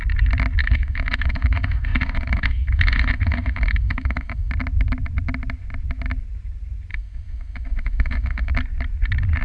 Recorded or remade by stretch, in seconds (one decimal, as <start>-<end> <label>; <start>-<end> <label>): 0.0-0.6 recorded; 0.6-4.5 remade; 4.5-6.9 recorded; 6.9-8.5 remade; 8.5-9.4 recorded